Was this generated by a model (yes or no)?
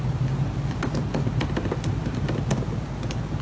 no